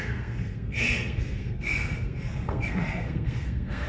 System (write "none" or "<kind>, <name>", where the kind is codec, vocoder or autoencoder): codec, SNAC